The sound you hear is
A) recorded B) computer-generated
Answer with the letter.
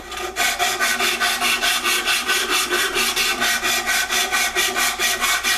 A